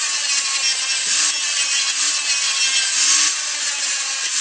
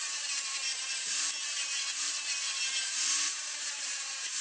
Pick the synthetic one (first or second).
second